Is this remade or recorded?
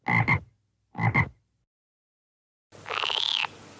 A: recorded